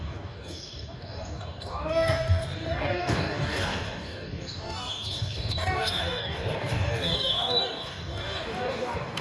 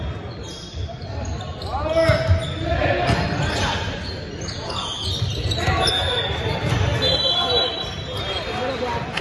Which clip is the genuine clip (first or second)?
second